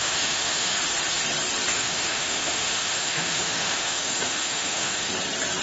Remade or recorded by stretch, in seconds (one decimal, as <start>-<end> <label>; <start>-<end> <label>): 0.0-0.8 remade; 0.8-1.7 recorded; 1.7-5.1 remade; 5.1-5.6 recorded

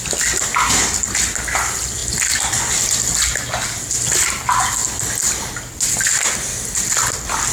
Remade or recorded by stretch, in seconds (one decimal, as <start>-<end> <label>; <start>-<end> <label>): 0.0-7.5 recorded